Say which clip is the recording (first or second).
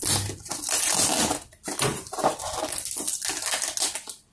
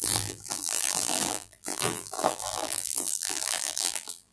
first